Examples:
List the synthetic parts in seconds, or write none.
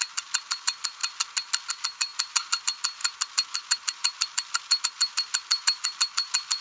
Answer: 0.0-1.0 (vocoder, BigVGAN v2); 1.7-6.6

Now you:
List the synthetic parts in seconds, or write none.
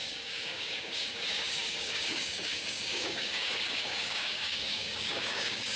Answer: 0.0-5.8 (codec, DAC)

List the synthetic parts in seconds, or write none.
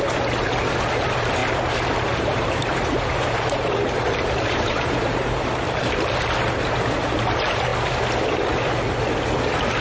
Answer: 1.4-5.8 (vocoder, BigVGAN v2)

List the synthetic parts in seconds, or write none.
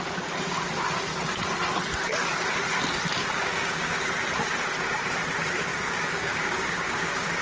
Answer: 3.2-4.1 (codec, DAC); 5.7-7.4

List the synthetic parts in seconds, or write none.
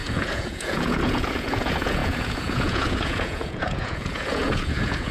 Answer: 0.0-5.1 (vocoder, Vocos)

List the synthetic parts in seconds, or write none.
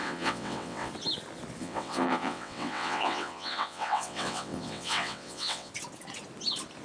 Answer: 0.0-0.9 (vocoder, WaveNeXt); 1.6-5.7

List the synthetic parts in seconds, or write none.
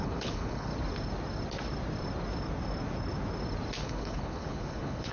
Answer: 0.0-0.7 (codec, HILCodec); 3.8-5.1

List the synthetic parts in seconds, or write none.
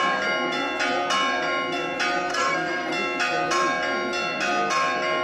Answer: 2.3-2.9 (codec, SNAC)